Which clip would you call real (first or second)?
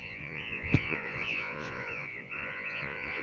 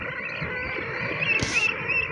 second